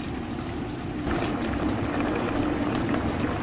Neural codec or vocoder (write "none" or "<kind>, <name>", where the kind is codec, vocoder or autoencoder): vocoder, BigVGAN v2